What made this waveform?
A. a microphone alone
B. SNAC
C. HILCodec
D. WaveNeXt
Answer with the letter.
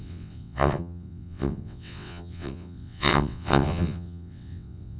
D